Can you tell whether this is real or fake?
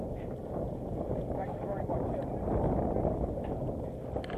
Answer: real